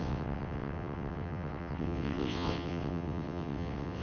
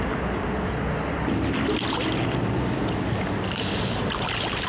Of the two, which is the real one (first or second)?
second